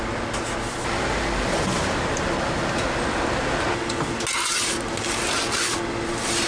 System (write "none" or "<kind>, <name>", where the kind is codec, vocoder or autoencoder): none